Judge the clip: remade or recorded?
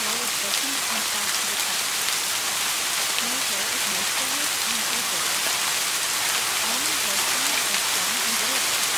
remade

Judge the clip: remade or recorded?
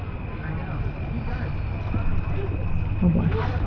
recorded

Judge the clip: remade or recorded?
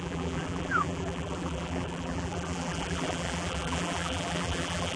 remade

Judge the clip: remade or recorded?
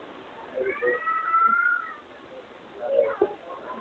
recorded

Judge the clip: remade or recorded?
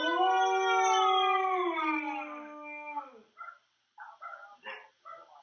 recorded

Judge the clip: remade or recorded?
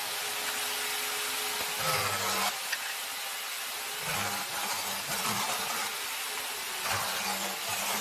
recorded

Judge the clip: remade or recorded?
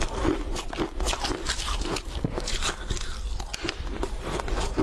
remade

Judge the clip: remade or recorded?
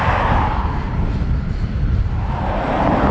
remade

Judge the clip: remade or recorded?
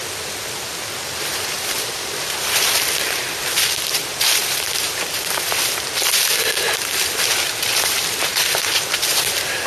remade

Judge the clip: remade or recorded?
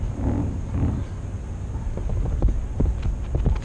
recorded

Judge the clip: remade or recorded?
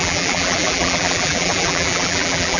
remade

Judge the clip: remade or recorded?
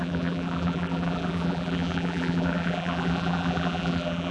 remade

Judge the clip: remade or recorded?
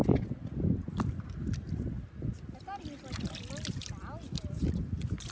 recorded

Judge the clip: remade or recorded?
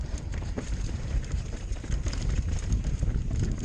remade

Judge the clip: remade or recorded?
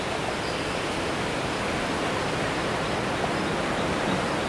recorded